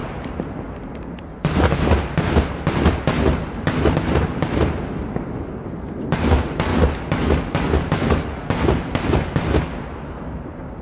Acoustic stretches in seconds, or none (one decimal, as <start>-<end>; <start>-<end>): 0.0-10.8